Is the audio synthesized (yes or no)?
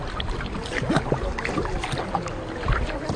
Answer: no